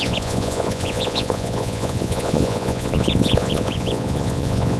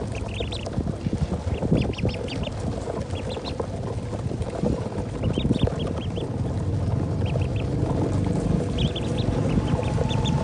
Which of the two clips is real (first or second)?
second